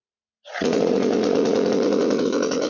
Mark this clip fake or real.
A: fake